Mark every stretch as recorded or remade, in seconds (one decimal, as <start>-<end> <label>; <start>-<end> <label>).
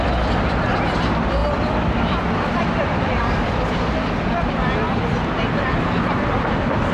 0.0-6.9 remade